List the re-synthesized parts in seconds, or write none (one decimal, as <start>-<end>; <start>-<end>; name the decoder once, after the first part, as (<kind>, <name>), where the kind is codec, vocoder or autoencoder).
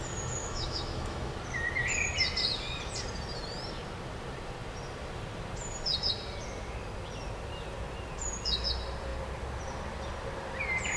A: 0.4-1.3 (autoencoder, DAC-VAE)